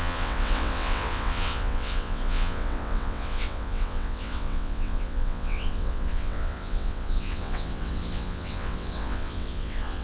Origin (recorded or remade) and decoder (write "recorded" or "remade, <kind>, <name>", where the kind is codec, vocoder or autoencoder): remade, vocoder, WaveNeXt